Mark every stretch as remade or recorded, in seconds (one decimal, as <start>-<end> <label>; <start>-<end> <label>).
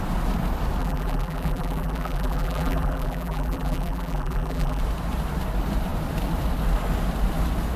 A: 0.0-0.8 recorded; 0.8-4.8 remade; 4.8-7.8 recorded